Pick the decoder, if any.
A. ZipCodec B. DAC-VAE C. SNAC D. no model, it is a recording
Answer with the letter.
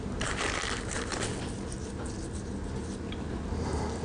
D